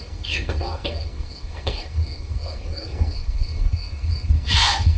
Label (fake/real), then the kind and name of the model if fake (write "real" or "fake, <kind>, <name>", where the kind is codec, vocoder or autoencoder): fake, codec, SNAC